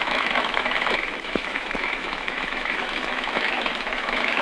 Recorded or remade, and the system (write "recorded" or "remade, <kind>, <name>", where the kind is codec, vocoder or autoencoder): remade, autoencoder, DAC-VAE